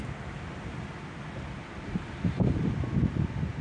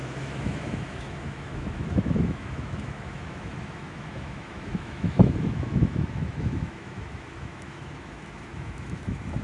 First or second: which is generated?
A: second